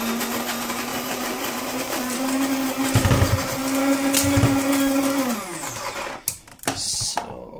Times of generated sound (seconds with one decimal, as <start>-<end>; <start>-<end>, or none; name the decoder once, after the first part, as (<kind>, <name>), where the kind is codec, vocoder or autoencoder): 0.9-2.2 (vocoder, BigVGAN v2); 6.5-7.1